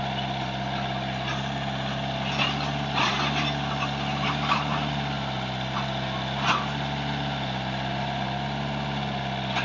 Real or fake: real